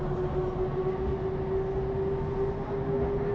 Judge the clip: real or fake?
real